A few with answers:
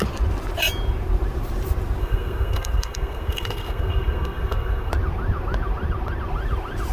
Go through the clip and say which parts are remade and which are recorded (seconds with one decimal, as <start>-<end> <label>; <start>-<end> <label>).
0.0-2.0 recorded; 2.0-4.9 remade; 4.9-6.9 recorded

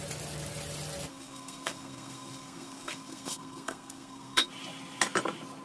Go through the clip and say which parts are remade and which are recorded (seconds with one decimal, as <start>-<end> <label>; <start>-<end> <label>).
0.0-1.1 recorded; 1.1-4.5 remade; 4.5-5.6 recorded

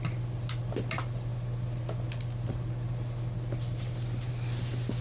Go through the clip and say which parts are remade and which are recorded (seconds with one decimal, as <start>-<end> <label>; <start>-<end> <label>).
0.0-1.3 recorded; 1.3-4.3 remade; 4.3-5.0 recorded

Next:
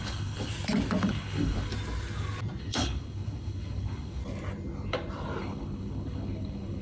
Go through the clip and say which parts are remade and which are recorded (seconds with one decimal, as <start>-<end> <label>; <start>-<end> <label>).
0.0-0.5 remade; 0.5-1.0 recorded; 1.0-1.7 remade; 1.7-2.6 recorded; 2.6-4.2 remade; 4.2-5.4 recorded; 5.4-6.8 remade

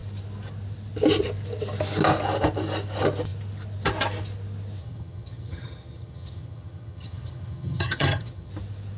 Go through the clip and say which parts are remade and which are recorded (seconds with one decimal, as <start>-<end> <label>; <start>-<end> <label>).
0.0-4.8 recorded; 4.8-8.5 remade; 8.5-9.0 recorded